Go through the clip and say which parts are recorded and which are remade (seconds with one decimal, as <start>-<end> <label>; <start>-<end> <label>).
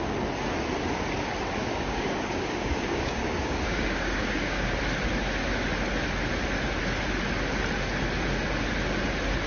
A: 0.0-1.6 recorded; 1.6-4.8 remade; 4.8-9.5 recorded